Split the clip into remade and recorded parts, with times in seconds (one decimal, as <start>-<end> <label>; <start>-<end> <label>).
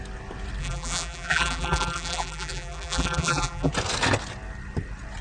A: 0.0-0.6 recorded; 0.6-3.7 remade; 3.7-5.2 recorded